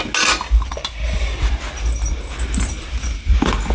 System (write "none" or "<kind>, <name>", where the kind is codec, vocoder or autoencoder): none